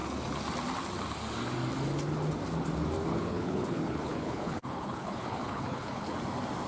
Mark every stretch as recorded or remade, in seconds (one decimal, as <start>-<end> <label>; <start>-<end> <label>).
0.0-3.1 recorded; 3.1-6.1 remade; 6.1-6.7 recorded

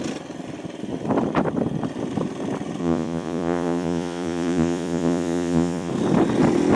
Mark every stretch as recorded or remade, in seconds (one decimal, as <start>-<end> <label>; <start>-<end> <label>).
0.0-2.8 recorded; 2.8-5.9 remade; 5.9-6.8 recorded